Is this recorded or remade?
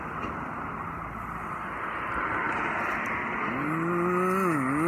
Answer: recorded